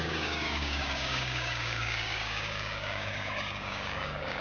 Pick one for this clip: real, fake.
fake